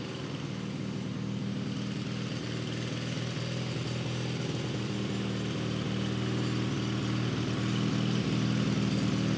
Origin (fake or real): real